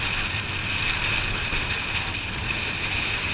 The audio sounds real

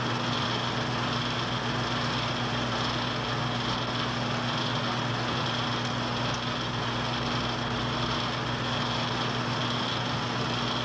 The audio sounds real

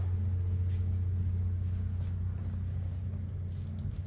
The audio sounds real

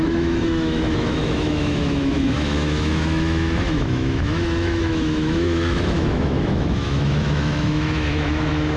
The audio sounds fake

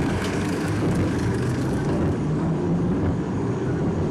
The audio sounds fake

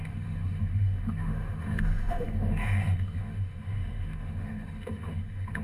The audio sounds fake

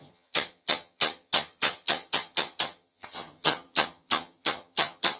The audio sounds fake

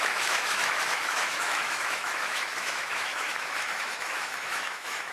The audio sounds fake